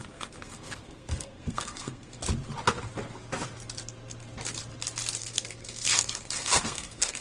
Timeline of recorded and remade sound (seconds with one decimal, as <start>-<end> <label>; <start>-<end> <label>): 0.0-2.2 remade; 2.2-5.2 recorded; 5.2-7.2 remade